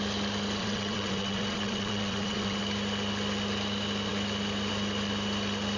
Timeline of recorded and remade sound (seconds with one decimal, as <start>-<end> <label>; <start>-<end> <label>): 0.0-0.6 recorded; 0.6-2.6 remade; 2.6-5.8 recorded